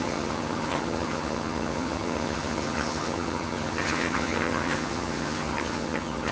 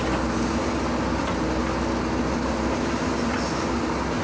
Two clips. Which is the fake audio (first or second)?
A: first